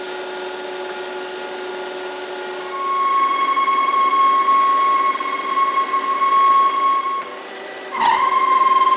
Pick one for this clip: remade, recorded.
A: recorded